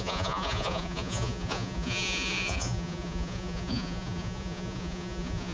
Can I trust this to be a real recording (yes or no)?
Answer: no